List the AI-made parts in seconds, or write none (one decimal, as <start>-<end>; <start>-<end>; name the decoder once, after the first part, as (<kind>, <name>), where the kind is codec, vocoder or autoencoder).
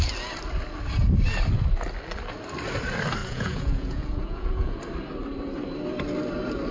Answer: 3.2-4.8 (vocoder, Vocos)